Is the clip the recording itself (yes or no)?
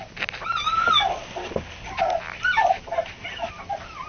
yes